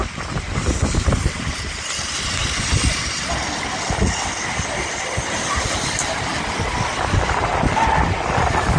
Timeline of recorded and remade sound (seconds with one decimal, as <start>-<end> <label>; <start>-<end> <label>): 0.0-8.8 recorded